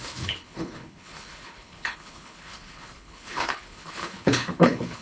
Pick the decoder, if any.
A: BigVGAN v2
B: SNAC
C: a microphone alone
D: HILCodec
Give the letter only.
D